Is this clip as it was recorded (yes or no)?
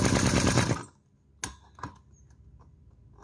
yes